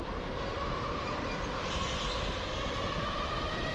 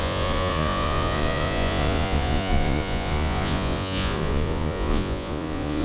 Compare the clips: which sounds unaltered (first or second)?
first